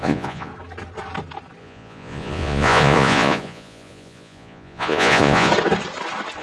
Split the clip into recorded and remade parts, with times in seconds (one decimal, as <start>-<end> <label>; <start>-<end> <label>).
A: 0.0-0.5 remade; 0.5-1.6 recorded; 1.6-5.5 remade; 5.5-6.4 recorded